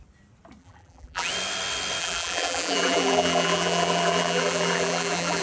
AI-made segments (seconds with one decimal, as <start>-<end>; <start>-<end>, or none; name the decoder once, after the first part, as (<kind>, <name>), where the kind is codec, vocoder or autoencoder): 0.6-1.3 (vocoder, BigVGAN v2); 2.0-5.4